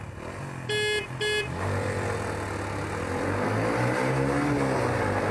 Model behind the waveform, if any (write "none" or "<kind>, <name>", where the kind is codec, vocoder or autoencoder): none